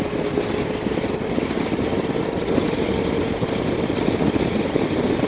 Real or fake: real